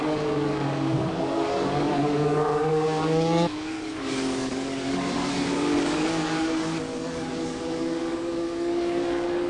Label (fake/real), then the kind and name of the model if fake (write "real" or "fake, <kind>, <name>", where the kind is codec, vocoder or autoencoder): fake, codec, DAC